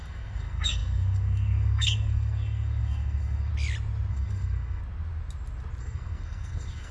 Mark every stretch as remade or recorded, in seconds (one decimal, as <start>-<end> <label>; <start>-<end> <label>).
0.0-3.5 remade; 3.5-4.1 recorded; 4.1-4.8 remade; 4.8-5.8 recorded; 5.8-6.9 remade